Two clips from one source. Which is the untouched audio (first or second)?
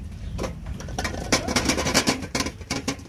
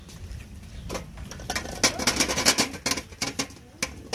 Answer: second